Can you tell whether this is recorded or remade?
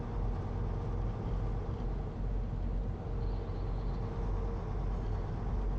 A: recorded